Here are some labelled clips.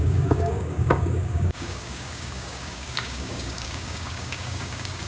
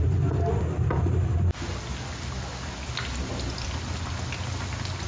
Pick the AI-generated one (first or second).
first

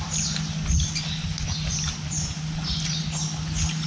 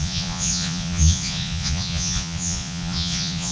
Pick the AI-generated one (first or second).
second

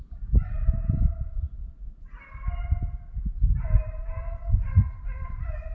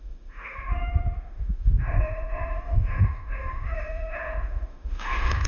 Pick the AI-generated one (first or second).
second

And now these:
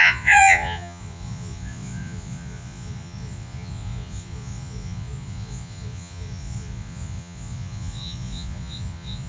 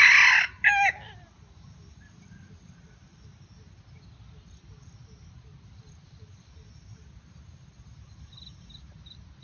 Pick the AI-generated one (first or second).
first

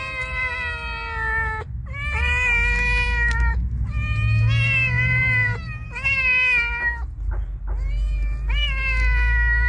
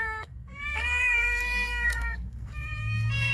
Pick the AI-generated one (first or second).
second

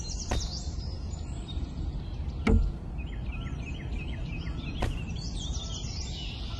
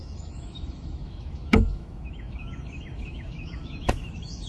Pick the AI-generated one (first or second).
second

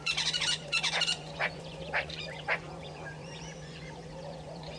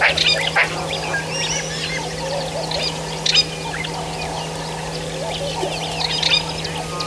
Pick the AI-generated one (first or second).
first